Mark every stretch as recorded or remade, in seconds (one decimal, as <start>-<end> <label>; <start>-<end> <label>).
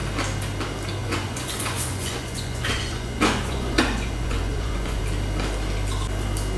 0.0-1.0 recorded; 1.0-5.0 remade; 5.0-6.6 recorded